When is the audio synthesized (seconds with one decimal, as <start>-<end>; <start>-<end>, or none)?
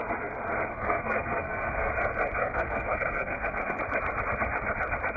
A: 0.7-1.9; 2.4-3.8